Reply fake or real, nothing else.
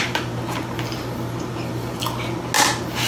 real